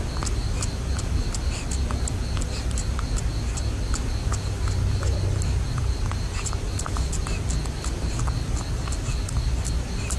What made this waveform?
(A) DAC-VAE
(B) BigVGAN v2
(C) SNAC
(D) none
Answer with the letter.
D